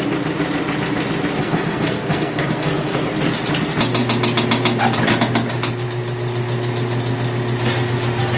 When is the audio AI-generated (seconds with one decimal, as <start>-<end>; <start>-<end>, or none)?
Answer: 1.4-3.0